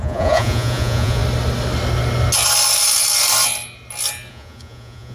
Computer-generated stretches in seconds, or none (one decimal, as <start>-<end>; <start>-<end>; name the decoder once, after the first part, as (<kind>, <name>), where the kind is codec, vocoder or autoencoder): 0.0-1.2 (vocoder, Vocos); 4.3-5.1